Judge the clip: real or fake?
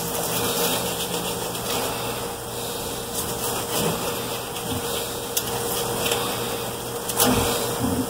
real